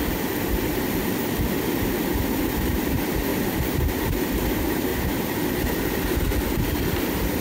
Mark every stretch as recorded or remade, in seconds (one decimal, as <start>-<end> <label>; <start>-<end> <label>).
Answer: 0.0-3.3 recorded; 3.3-3.8 remade; 3.8-4.9 recorded; 4.9-6.2 remade; 6.2-7.4 recorded